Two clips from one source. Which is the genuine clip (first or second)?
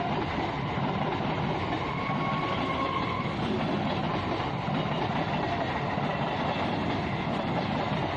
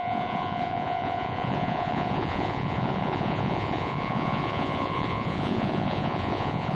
first